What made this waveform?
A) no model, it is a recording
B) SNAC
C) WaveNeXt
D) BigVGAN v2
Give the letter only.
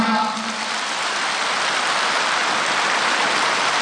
A